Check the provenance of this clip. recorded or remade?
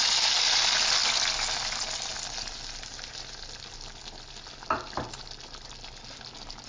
recorded